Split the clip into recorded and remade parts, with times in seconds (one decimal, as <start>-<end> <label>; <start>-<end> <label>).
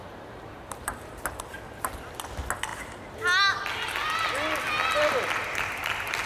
0.0-1.2 remade; 1.2-6.3 recorded